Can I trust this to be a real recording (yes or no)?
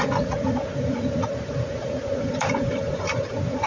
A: no